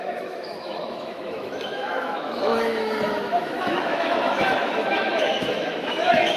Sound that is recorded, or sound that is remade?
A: remade